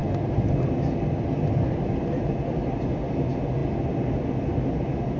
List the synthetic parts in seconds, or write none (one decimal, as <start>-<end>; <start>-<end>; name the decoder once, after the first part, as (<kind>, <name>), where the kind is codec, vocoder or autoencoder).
none